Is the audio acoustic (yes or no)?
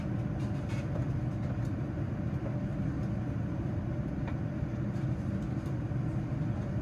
yes